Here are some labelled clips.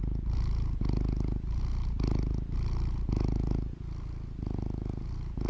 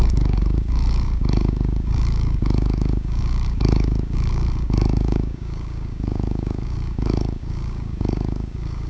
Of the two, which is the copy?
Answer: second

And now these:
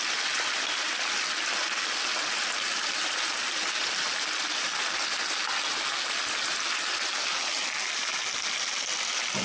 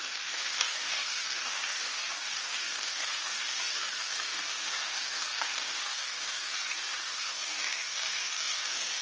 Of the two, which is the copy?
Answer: second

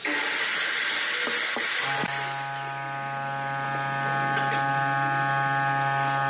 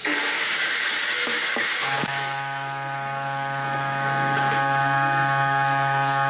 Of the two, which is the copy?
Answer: second